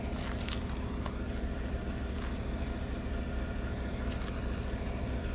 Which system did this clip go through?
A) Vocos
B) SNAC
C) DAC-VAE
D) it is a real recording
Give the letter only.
D